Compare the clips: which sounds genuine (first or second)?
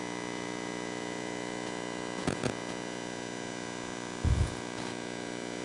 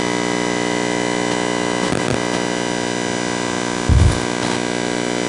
second